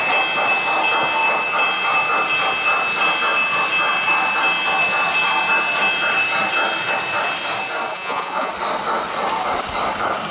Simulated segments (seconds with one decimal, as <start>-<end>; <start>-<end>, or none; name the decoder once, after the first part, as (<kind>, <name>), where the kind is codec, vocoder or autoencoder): 7.9-8.5 (vocoder, Vocos)